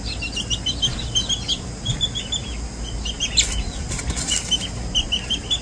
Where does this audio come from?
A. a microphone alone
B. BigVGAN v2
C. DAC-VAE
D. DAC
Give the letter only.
A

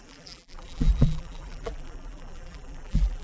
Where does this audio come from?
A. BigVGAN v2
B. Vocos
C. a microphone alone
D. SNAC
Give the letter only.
A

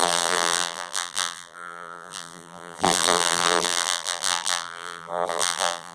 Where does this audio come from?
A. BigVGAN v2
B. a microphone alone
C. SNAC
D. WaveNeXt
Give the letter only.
A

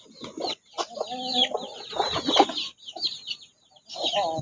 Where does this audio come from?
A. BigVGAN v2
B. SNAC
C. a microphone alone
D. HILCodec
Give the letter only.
C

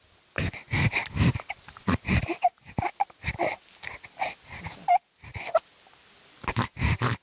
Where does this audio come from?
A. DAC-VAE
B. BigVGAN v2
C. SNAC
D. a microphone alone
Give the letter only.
D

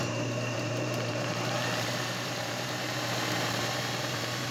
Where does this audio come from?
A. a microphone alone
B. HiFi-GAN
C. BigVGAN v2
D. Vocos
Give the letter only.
C